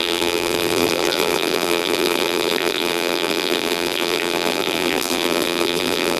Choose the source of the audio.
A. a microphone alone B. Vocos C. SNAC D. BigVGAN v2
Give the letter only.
D